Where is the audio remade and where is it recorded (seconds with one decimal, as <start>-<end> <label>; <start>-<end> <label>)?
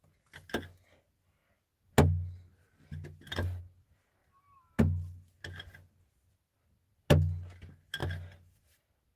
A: 0.0-9.2 recorded